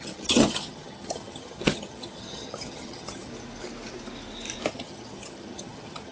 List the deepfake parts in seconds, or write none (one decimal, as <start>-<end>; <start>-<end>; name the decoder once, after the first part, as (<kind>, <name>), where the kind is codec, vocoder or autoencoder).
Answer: 0.0-3.3 (vocoder, HiFi-GAN); 4.7-6.1